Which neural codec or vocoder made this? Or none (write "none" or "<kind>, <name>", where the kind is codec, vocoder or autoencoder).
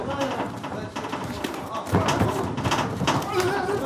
none